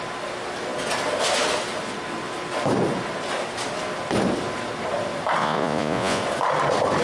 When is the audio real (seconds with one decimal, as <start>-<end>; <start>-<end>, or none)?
0.0-5.4; 6.2-7.0